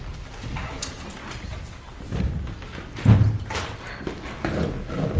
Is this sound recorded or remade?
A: recorded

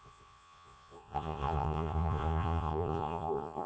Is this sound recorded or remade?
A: remade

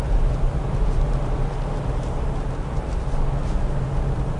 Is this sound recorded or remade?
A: recorded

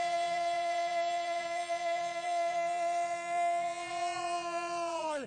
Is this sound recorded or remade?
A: remade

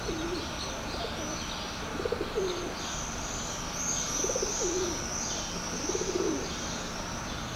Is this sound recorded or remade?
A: recorded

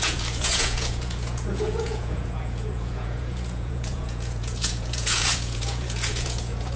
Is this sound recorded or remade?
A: remade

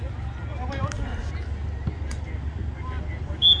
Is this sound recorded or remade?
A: recorded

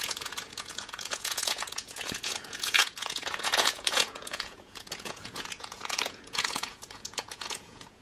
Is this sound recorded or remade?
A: remade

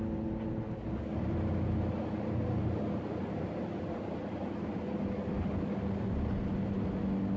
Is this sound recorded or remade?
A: recorded